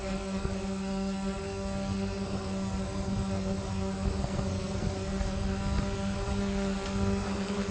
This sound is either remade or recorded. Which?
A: remade